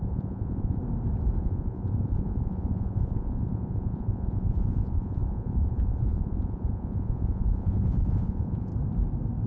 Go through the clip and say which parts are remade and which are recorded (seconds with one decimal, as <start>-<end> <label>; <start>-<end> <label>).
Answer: 0.0-0.8 remade; 0.8-1.4 recorded; 1.4-8.7 remade; 8.7-9.5 recorded